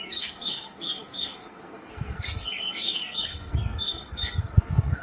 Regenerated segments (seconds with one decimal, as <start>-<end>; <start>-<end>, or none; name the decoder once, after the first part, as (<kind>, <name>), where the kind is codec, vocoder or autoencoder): 0.0-5.0 (codec, SNAC)